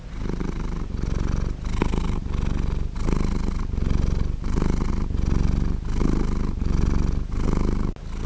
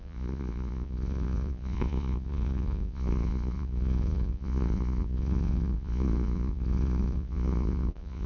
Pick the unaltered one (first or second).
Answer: first